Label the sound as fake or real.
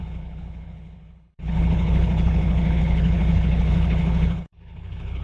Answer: fake